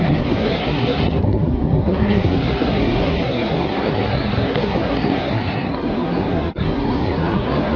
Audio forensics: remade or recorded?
remade